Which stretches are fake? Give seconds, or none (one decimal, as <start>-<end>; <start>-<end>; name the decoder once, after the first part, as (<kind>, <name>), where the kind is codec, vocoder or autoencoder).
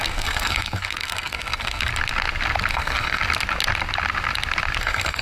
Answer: 0.0-1.9 (codec, SNAC); 2.7-3.2; 4.8-5.2